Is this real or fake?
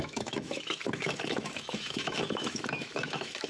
fake